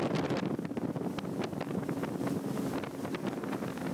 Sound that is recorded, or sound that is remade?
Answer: recorded